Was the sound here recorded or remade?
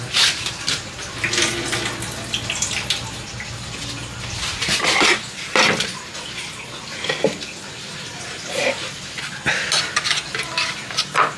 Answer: recorded